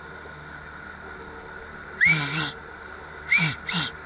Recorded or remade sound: recorded